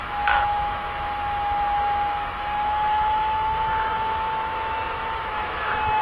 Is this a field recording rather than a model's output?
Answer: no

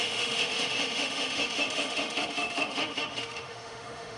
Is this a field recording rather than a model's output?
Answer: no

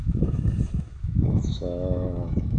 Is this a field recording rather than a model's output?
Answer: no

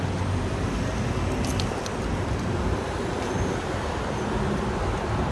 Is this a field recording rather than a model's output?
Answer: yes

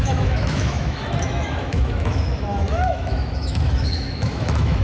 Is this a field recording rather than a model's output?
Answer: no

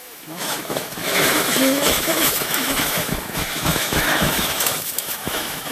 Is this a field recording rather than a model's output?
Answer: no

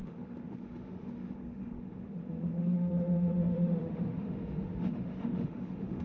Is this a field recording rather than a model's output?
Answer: no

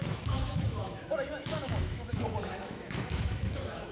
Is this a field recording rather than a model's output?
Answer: no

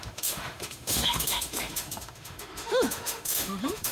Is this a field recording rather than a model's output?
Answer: no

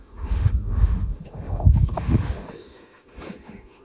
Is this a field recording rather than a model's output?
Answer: no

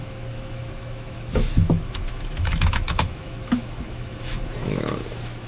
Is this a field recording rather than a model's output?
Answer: no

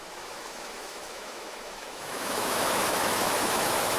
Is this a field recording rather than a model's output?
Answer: no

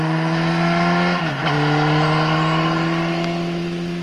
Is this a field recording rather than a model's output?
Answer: yes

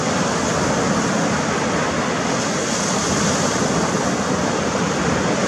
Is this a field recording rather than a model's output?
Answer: yes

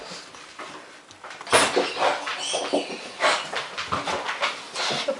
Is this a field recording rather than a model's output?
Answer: yes